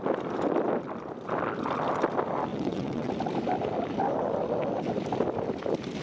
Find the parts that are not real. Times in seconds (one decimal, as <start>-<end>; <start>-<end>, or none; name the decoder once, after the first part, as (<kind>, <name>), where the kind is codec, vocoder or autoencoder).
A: 2.5-3.1 (vocoder, WaveNeXt)